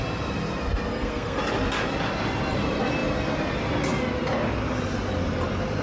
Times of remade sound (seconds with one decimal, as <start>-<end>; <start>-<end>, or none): 0.9-1.4